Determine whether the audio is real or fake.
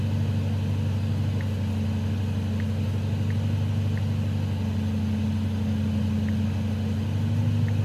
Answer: real